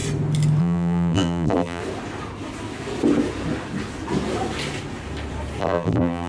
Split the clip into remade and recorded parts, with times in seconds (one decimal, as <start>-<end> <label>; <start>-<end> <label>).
0.0-0.6 recorded; 0.6-1.8 remade; 1.8-5.6 recorded; 5.6-6.3 remade

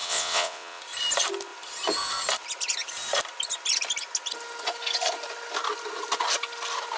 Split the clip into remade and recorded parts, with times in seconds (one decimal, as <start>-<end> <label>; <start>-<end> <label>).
0.0-0.8 remade; 0.8-7.0 recorded

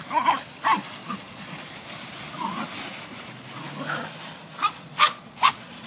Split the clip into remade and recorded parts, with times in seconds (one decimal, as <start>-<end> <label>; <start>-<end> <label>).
0.0-1.0 recorded; 1.0-1.8 remade; 1.8-4.6 recorded; 4.6-5.9 remade

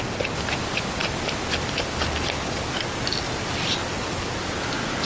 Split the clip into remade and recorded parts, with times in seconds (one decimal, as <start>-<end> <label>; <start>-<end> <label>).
0.0-5.1 recorded